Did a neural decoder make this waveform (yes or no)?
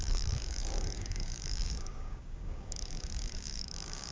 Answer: yes